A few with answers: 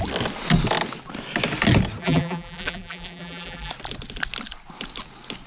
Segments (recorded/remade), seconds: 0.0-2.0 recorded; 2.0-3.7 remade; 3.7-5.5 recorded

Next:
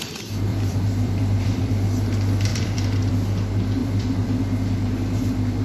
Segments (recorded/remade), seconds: 0.0-0.5 recorded; 0.5-1.7 remade; 1.7-2.5 recorded; 2.5-3.1 remade; 3.1-3.8 recorded; 3.8-4.4 remade; 4.4-5.6 recorded

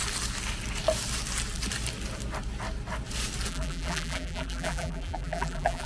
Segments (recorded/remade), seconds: 0.0-3.5 recorded; 3.5-5.9 remade

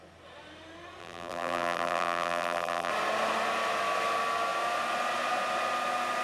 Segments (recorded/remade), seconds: 0.0-1.0 recorded; 1.0-2.9 remade; 2.9-6.2 recorded

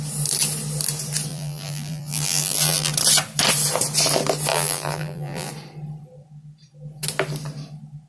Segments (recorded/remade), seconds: 0.0-1.3 recorded; 1.3-2.9 remade; 2.9-4.5 recorded; 4.5-5.5 remade; 5.5-8.1 recorded

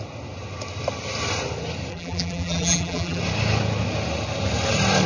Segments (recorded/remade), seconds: 0.0-1.9 recorded; 1.9-3.2 remade; 3.2-5.1 recorded

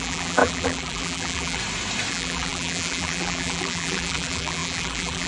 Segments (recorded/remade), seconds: 0.0-1.6 remade; 1.6-2.1 recorded; 2.1-5.3 remade